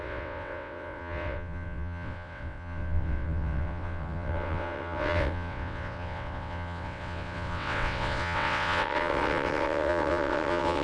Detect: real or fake fake